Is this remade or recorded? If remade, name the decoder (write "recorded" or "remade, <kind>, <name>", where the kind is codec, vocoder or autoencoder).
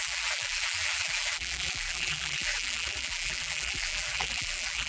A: remade, vocoder, BigVGAN v2